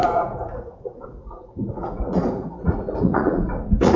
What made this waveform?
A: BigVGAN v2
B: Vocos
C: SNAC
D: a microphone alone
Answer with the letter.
B